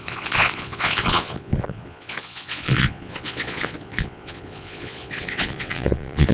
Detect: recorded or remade remade